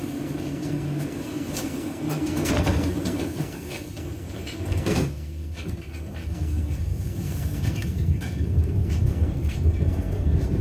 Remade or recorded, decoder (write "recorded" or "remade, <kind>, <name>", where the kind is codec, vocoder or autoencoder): remade, codec, SNAC